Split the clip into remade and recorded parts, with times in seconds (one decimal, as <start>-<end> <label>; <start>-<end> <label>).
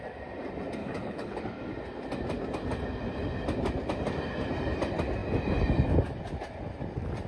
0.0-0.8 recorded; 0.8-1.4 remade; 1.4-7.3 recorded